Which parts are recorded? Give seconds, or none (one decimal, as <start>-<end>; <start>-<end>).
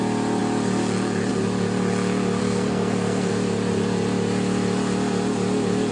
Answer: 0.0-2.4; 3.3-5.9